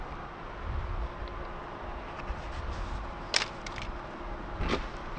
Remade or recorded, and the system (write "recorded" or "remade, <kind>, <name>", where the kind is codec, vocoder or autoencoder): recorded